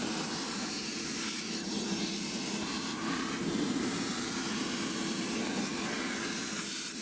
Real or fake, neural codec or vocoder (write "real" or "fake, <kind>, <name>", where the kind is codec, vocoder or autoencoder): fake, vocoder, BigVGAN v2